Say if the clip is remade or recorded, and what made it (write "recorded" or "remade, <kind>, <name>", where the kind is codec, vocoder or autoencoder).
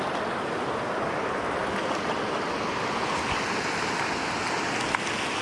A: recorded